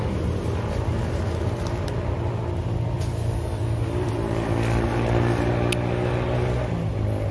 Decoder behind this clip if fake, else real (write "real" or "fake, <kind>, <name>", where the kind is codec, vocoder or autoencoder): real